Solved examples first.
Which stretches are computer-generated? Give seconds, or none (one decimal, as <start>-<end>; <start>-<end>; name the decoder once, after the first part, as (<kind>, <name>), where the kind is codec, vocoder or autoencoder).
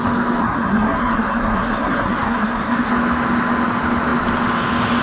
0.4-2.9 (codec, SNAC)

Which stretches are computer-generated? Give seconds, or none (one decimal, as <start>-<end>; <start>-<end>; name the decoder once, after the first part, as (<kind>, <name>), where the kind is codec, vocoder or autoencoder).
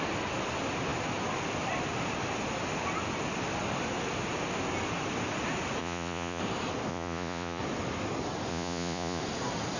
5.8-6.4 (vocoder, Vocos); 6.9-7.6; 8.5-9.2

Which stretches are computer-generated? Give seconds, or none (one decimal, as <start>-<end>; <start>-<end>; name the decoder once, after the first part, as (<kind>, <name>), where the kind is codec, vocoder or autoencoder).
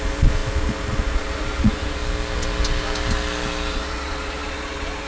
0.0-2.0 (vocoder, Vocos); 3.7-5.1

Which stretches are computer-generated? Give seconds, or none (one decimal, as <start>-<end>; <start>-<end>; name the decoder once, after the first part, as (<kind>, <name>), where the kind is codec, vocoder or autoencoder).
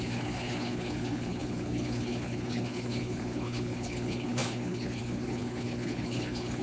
0.0-6.6 (codec, HILCodec)